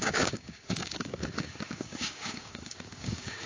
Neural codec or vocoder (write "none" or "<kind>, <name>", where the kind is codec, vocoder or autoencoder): codec, DAC